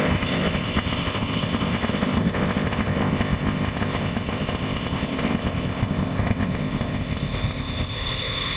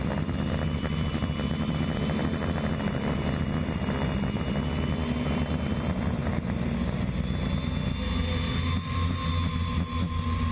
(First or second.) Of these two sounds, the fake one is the first